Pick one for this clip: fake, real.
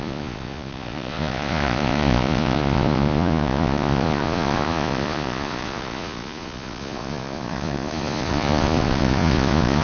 fake